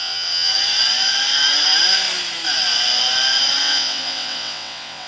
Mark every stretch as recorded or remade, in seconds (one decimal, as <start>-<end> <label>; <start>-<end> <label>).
0.0-0.5 remade; 0.5-3.6 recorded; 3.6-5.1 remade